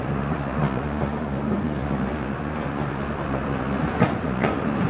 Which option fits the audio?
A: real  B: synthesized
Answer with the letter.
B